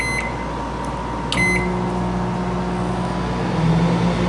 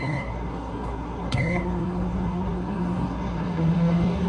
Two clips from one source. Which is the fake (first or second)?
second